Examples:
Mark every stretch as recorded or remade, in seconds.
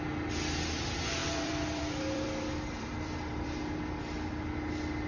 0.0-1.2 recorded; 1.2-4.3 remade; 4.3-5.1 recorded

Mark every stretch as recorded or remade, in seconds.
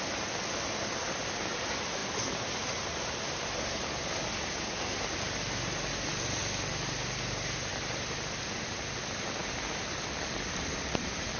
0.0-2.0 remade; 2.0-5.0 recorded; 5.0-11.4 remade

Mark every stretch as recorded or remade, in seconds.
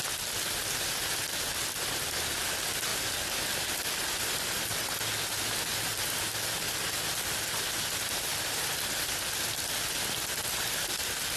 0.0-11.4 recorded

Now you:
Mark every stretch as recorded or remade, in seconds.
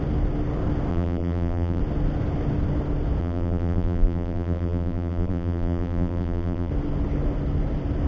0.0-0.9 recorded; 0.9-1.8 remade; 1.8-3.2 recorded; 3.2-6.7 remade; 6.7-8.1 recorded